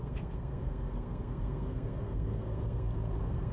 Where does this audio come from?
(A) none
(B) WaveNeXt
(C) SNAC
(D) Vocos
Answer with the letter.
C